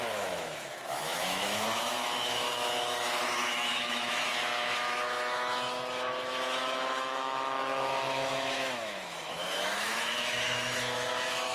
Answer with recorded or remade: remade